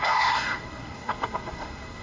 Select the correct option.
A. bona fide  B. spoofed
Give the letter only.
B